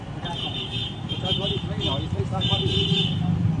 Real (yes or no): no